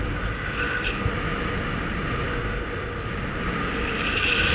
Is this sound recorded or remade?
recorded